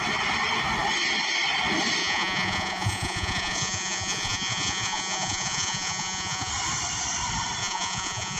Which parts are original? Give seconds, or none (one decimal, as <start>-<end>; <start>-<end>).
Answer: 0.0-2.0; 6.5-7.6